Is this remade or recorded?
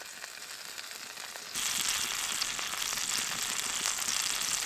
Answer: recorded